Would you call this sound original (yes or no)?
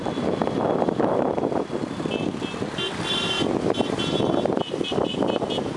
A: yes